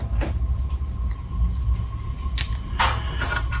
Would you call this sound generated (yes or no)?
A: no